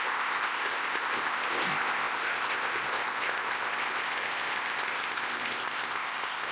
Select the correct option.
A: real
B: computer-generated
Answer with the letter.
B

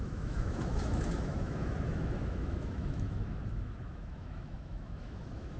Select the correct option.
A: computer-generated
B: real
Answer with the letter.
A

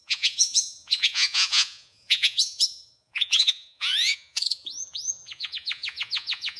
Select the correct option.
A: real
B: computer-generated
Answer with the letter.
B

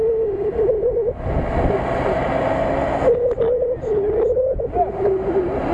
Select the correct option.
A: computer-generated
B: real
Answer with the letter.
B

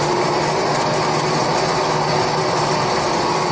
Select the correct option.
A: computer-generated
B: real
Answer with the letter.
B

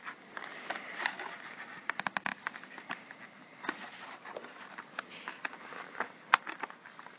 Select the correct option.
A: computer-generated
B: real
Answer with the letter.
B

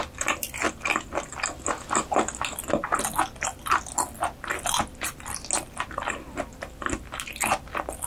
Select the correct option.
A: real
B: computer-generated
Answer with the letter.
A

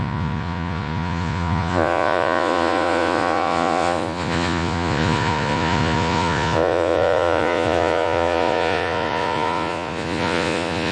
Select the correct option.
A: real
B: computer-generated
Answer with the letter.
B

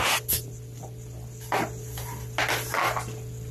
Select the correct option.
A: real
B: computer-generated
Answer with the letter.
A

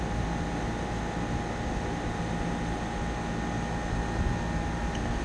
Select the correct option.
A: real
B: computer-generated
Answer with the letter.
A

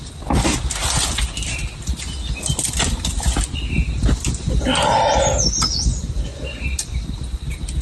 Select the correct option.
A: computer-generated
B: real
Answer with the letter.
B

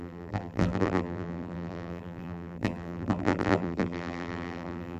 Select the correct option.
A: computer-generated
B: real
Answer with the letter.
A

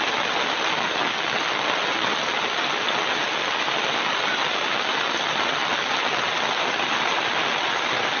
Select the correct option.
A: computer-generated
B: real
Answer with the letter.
B